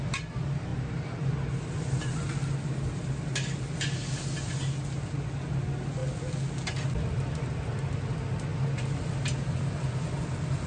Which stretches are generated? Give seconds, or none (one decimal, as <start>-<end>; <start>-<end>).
none